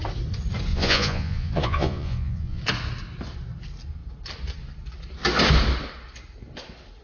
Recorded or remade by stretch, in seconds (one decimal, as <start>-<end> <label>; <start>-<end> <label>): 0.0-0.7 recorded; 0.7-2.6 remade; 2.6-7.0 recorded